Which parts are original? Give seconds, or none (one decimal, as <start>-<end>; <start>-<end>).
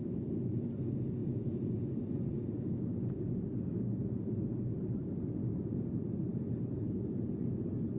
0.0-2.4; 4.0-5.4; 5.9-8.0